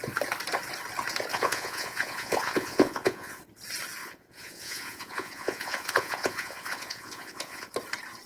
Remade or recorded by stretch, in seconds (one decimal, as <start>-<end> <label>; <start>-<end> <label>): 0.0-1.3 recorded; 1.3-3.4 remade; 3.4-4.0 recorded; 4.0-7.7 remade; 7.7-8.3 recorded